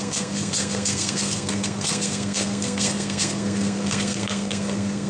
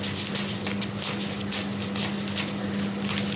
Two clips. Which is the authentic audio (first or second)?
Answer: second